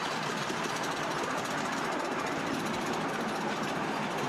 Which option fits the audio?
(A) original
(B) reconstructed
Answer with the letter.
A